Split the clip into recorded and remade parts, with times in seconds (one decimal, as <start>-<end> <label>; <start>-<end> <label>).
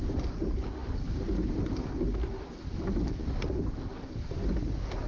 0.0-5.1 recorded